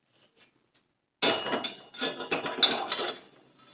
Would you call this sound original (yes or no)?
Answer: yes